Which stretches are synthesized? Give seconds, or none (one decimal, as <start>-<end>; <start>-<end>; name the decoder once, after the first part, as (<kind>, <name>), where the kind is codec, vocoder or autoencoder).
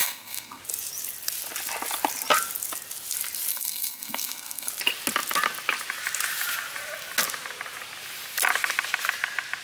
0.0-0.6 (codec, SNAC); 3.5-4.7